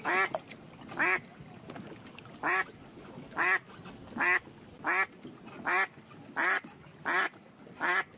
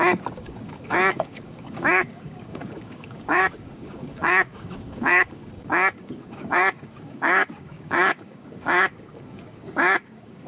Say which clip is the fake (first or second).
second